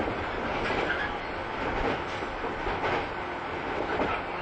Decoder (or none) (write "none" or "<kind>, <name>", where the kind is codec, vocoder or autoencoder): none